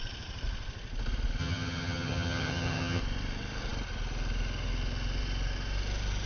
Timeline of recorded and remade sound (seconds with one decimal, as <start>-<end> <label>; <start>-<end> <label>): 0.0-1.4 recorded; 1.4-3.0 remade; 3.0-6.3 recorded